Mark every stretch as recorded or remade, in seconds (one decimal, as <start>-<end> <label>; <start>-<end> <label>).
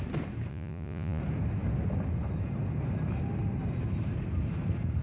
0.0-0.5 recorded; 0.5-1.2 remade; 1.2-5.0 recorded